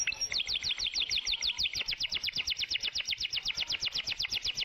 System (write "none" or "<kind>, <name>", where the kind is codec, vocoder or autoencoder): vocoder, BigVGAN v2